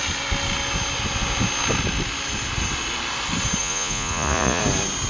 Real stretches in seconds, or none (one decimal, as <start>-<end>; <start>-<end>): 0.0-3.6; 4.6-5.1

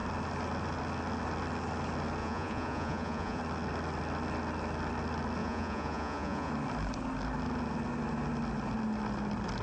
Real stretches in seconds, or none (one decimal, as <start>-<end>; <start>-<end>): 0.0-2.2; 3.4-5.4; 6.5-9.6

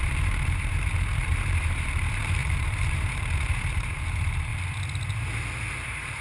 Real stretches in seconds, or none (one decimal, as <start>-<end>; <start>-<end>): 4.5-5.4

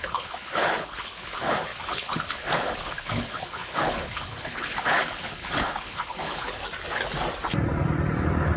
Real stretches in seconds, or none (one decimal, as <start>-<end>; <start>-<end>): 6.6-8.6

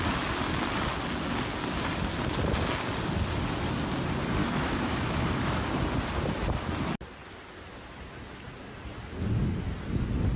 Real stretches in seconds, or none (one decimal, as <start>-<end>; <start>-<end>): 0.0-4.4; 5.6-10.4

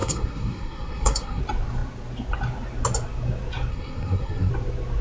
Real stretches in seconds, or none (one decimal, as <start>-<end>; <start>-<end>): 1.4-3.7; 4.5-5.0